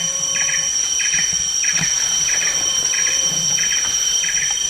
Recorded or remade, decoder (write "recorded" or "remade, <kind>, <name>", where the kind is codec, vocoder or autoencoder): remade, vocoder, BigVGAN v2